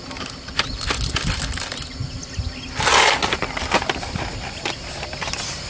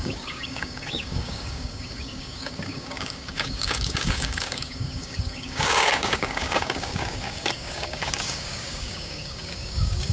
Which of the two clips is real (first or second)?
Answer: first